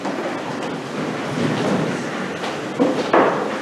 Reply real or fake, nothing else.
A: real